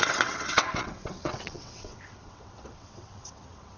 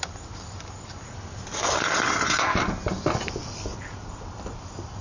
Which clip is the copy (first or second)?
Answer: first